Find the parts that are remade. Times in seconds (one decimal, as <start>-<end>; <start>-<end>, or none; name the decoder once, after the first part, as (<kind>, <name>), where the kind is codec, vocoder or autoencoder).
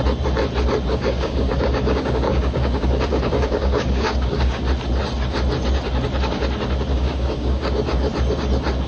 0.9-4.6 (codec, DAC); 6.9-7.7